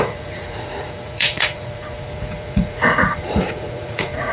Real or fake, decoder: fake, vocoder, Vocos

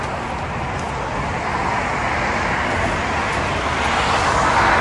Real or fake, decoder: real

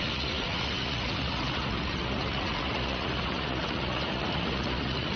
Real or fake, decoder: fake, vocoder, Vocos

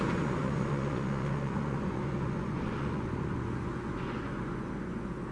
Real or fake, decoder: fake, vocoder, Vocos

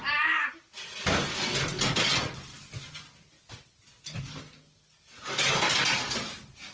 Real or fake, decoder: real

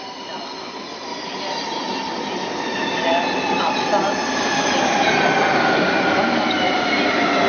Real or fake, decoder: real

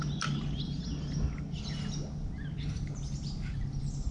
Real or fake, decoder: real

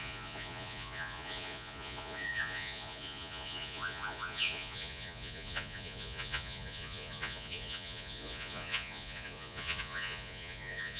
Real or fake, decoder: fake, vocoder, Vocos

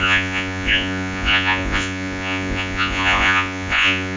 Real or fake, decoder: fake, vocoder, Vocos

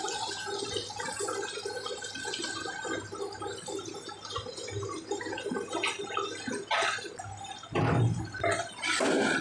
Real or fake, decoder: real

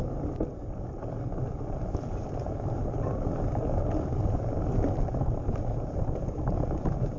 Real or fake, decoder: real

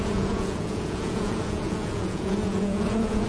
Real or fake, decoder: fake, vocoder, Vocos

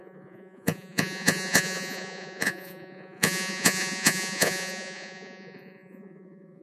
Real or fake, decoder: fake, vocoder, Vocos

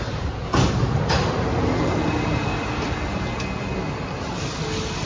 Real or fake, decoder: real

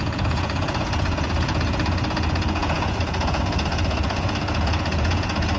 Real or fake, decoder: fake, vocoder, Vocos